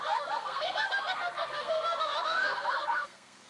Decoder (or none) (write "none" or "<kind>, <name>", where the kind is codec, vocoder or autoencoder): codec, SNAC